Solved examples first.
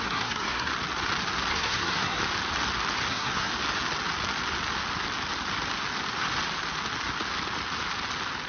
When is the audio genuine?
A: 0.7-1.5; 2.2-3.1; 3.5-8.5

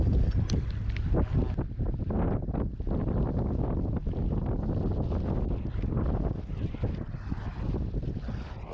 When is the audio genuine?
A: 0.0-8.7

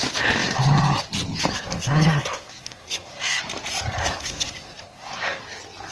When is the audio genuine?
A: 0.0-1.5; 3.4-4.0; 5.4-5.9